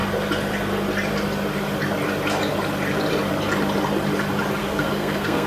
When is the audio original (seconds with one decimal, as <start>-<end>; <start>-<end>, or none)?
0.0-4.6